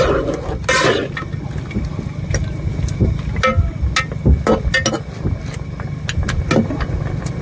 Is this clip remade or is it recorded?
recorded